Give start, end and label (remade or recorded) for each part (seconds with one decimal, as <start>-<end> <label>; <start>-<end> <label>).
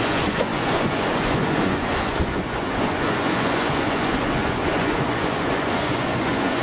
0.0-6.6 remade